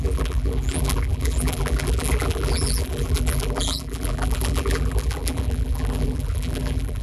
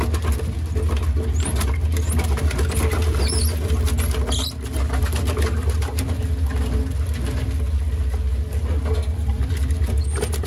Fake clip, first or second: first